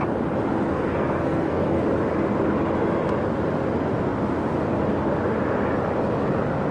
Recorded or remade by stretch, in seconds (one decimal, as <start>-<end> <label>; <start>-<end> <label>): 0.0-0.7 recorded; 0.7-1.8 remade; 1.8-6.7 recorded

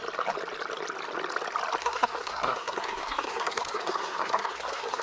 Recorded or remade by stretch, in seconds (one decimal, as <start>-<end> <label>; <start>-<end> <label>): 0.0-1.8 recorded; 1.8-5.0 remade

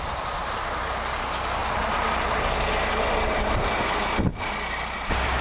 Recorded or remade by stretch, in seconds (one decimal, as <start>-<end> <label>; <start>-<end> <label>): 0.0-5.4 recorded

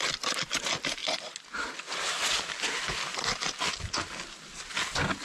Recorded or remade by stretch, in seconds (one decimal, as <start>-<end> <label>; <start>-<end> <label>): 0.0-5.2 recorded

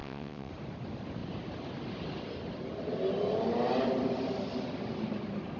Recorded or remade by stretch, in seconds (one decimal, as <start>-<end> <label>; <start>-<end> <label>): 0.0-0.5 remade; 0.5-5.6 recorded